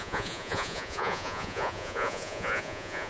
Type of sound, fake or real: fake